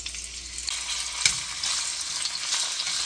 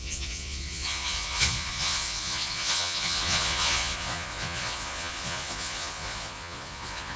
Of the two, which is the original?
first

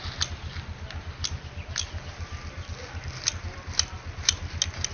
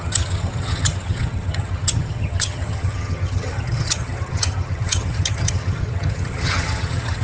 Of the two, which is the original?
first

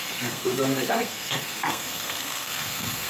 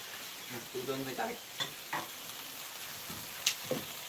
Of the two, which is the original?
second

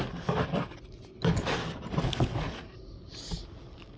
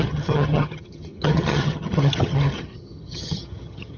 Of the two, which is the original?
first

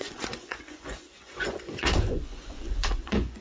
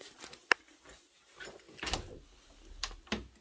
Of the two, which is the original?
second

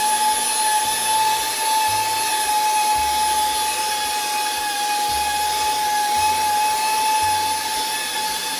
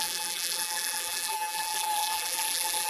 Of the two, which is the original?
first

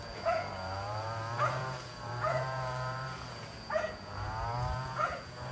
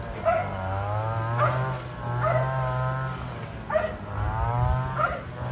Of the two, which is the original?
second